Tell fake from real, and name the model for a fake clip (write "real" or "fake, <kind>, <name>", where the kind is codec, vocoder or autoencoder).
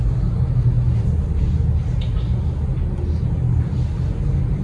real